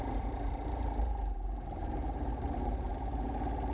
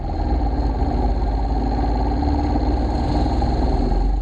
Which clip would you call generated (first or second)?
first